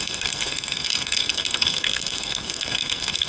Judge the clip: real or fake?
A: fake